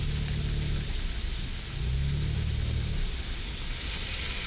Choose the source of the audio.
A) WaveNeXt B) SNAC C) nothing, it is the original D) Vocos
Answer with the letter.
C